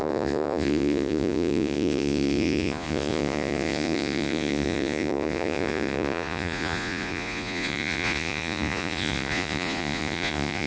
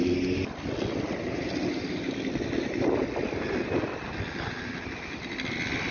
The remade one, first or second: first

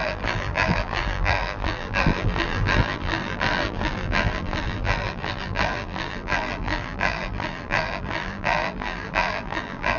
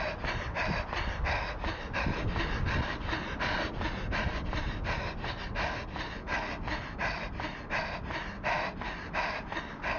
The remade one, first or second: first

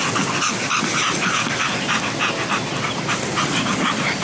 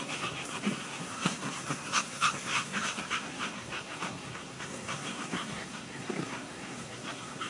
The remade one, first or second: second